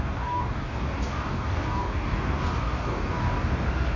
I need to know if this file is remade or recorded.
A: remade